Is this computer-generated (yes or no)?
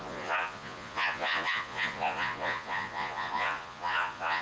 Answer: yes